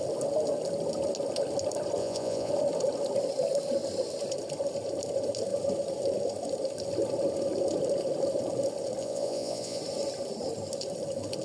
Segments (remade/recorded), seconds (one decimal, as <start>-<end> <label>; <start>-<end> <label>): 0.0-2.0 recorded; 2.0-2.5 remade; 2.5-9.0 recorded; 9.0-9.8 remade; 9.8-11.4 recorded